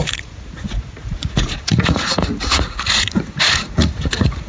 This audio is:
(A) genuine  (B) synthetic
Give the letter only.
B